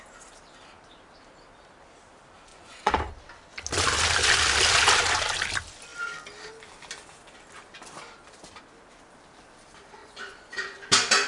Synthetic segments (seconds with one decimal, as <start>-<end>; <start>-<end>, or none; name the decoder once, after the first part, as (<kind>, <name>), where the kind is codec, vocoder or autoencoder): 2.5-3.1 (vocoder, Vocos); 10.0-10.8